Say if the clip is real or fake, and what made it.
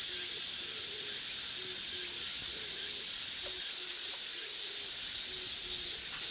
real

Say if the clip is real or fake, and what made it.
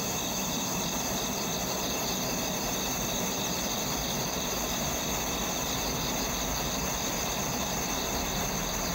real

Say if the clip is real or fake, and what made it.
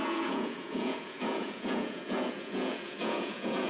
fake, vocoder, Vocos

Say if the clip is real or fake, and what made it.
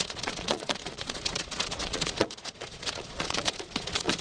fake, vocoder, Vocos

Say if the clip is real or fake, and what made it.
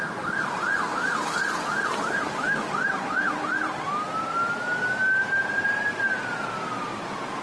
real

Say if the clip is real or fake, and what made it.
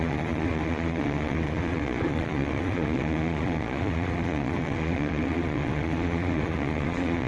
fake, vocoder, Vocos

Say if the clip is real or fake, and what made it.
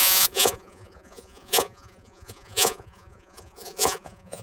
fake, vocoder, Vocos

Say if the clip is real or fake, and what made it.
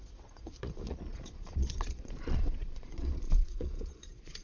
fake, vocoder, Vocos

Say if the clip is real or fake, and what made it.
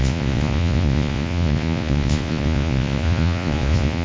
fake, vocoder, Vocos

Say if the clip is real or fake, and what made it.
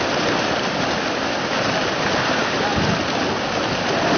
real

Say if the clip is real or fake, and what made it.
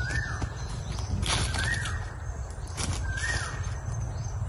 real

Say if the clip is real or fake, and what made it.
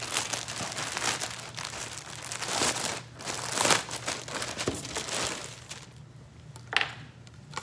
real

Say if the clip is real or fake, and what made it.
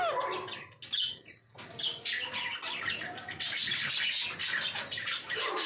real